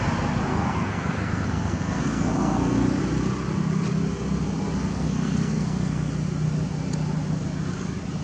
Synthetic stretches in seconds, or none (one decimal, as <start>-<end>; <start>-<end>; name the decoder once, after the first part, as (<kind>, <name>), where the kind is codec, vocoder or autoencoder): 0.5-3.0 (codec, SNAC); 4.9-6.1